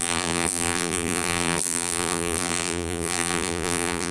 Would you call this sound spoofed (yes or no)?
yes